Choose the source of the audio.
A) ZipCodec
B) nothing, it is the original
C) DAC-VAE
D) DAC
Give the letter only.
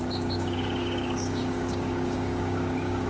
D